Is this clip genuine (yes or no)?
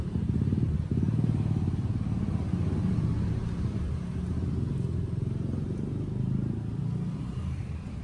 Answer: yes